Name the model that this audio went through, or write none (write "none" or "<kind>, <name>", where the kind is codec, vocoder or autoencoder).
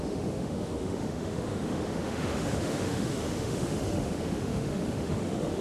autoencoder, DAC-VAE